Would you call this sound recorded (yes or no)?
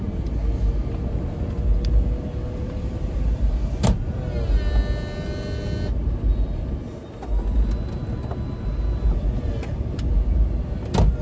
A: yes